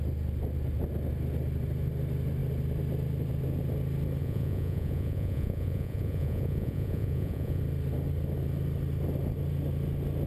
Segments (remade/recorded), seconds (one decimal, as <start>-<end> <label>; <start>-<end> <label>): 0.0-4.2 recorded; 4.2-7.6 remade; 7.6-10.3 recorded